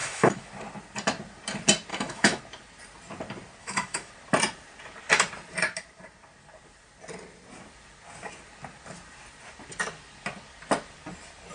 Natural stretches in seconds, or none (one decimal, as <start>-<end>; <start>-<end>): 0.5-1.9; 2.4-3.6; 4.1-11.5